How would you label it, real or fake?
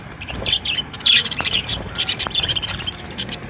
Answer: fake